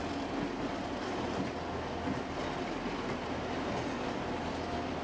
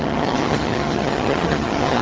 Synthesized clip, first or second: second